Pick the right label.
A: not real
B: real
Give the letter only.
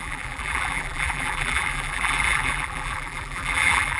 A